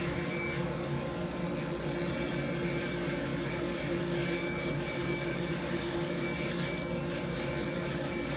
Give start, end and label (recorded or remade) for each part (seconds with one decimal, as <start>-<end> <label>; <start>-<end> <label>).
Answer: 0.0-1.4 remade; 1.4-2.8 recorded; 2.8-8.4 remade